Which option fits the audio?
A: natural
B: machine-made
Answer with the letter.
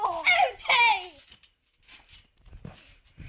A